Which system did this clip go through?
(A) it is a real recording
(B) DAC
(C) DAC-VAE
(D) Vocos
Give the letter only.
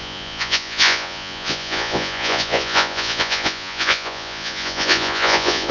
D